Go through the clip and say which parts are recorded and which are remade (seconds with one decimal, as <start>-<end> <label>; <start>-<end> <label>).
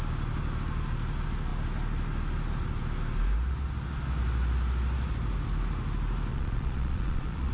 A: 0.0-6.3 recorded; 6.3-7.5 remade